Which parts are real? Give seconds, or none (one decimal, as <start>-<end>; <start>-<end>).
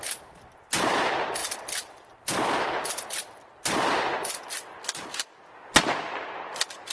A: 0.0-6.9